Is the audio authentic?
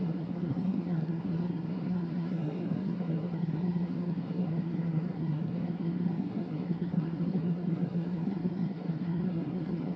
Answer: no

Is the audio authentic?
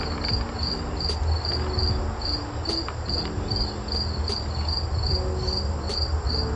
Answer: yes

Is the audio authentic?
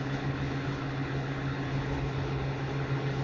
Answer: no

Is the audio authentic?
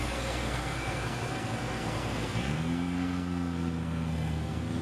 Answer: no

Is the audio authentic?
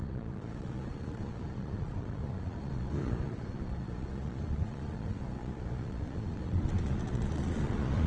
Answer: no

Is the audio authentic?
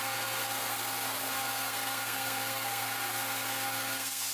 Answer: no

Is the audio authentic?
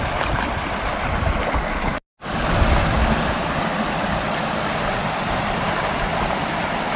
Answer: yes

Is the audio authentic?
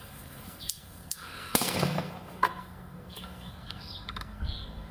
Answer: no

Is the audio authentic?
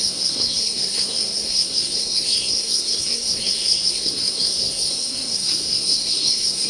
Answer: no